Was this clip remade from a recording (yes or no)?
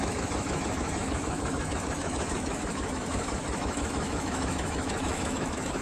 yes